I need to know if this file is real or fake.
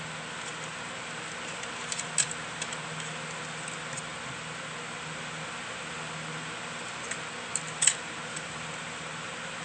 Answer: real